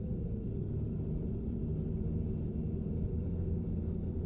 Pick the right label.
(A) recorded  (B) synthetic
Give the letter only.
A